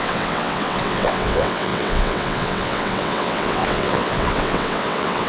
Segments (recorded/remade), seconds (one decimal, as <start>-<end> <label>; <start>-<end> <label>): 0.0-5.3 remade